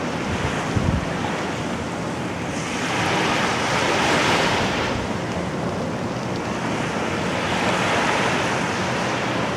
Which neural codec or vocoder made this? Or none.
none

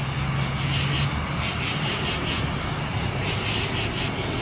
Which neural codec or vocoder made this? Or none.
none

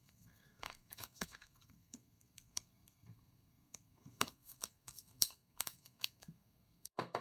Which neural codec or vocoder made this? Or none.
codec, SNAC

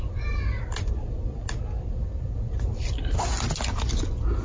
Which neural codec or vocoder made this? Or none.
none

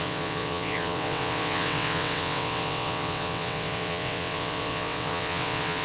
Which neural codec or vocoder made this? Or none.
vocoder, WaveNeXt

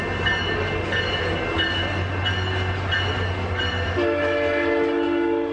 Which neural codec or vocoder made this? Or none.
none